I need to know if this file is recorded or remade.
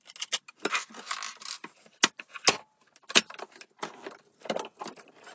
recorded